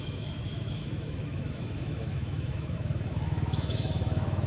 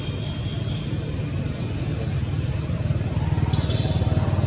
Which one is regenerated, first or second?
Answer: first